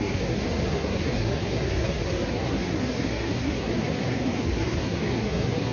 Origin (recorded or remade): remade